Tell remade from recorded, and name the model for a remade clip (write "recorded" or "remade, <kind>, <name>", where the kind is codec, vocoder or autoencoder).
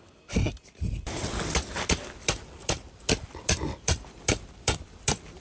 remade, vocoder, BigVGAN v2